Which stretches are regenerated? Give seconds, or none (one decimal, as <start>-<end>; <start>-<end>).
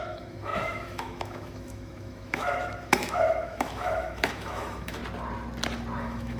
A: 0.0-5.0; 6.0-6.4